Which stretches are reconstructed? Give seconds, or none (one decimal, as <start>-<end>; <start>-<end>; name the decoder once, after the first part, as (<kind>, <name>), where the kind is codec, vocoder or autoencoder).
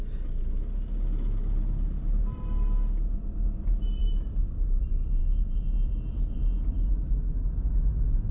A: 4.0-4.8 (vocoder, BigVGAN v2)